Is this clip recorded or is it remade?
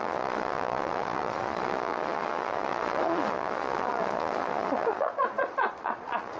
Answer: remade